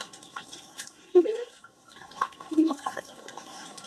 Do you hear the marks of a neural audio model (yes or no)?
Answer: yes